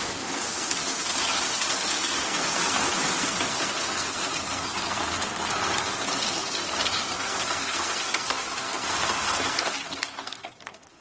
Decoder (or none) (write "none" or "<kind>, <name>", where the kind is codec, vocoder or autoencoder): codec, SNAC